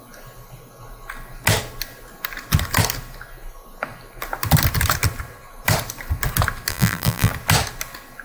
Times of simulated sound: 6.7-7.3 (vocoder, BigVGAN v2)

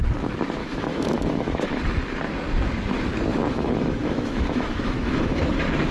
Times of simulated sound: 0.6-1.8 (autoencoder, DAC-VAE); 3.3-5.5